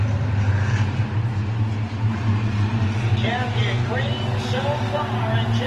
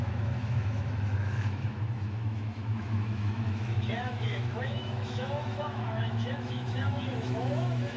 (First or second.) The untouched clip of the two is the first